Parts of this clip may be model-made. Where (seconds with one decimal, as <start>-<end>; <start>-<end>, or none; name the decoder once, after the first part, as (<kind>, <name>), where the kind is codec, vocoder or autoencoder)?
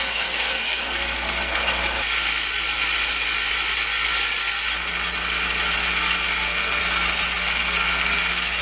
0.0-1.8 (codec, SNAC); 5.9-6.8; 7.4-8.6